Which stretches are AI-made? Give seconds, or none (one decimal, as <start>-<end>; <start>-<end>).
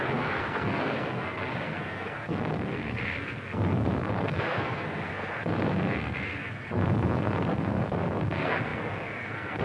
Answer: 0.0-9.6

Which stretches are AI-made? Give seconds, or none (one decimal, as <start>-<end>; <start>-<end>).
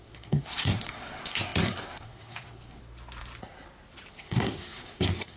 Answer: 0.0-2.8; 4.1-5.4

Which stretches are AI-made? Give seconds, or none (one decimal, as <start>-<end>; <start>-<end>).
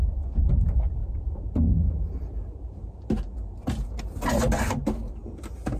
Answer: none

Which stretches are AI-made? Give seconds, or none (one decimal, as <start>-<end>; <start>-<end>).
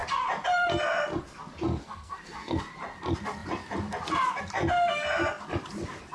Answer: 1.8-2.6